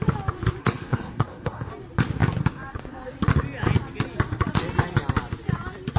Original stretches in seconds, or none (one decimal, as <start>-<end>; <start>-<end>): 0.0-0.6; 1.7-6.0